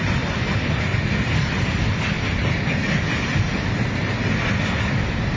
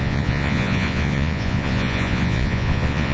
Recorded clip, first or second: first